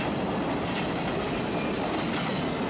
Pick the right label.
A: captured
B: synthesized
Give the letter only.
A